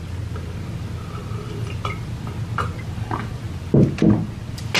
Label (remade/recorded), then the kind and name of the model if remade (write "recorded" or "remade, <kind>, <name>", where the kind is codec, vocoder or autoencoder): recorded